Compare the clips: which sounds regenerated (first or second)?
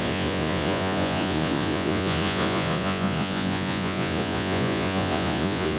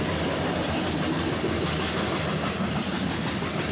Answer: first